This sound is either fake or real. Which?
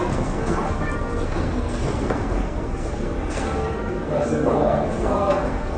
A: fake